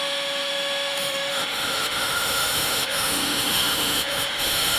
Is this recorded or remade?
remade